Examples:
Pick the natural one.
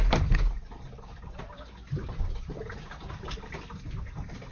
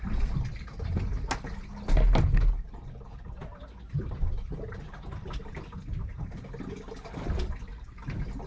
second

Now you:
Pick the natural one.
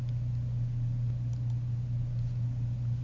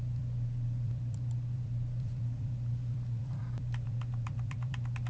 first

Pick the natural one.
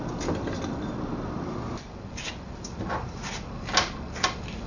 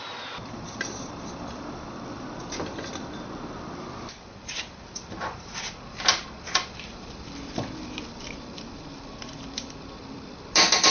first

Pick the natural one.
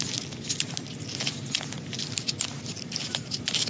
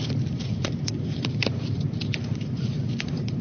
first